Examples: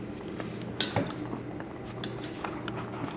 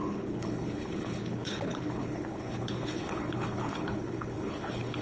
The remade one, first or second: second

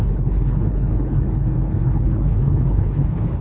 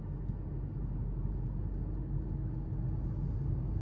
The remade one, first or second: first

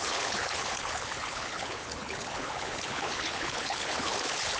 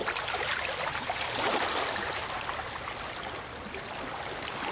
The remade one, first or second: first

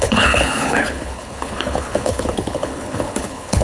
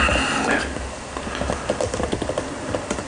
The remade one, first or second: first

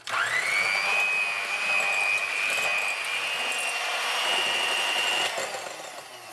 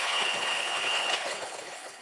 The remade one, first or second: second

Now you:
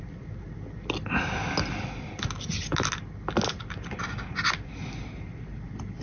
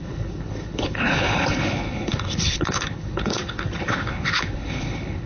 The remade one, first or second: second